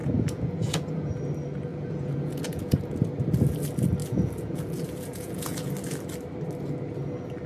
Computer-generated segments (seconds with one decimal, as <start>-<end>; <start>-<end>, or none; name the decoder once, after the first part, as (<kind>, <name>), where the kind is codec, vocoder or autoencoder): 0.0-1.1 (vocoder, Vocos); 1.7-3.0; 4.0-5.7